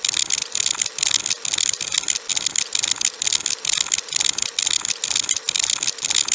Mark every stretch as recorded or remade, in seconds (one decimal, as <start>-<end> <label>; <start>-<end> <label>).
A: 0.0-6.3 recorded